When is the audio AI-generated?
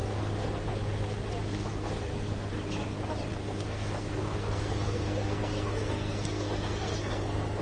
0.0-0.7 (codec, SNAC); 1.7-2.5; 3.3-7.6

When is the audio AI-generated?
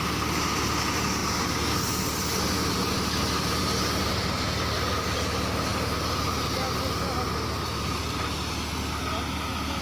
none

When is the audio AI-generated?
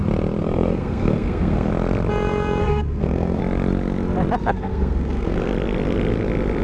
0.4-1.7 (codec, SNAC); 2.6-3.4; 4.4-5.4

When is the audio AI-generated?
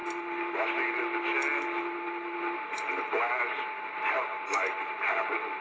none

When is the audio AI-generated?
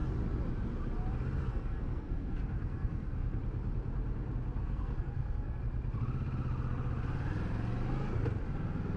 1.4-3.4 (codec, SNAC); 4.6-5.6